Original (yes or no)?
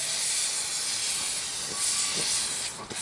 yes